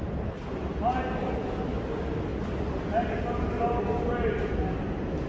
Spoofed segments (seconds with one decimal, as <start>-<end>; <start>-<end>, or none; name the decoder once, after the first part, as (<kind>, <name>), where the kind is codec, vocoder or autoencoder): none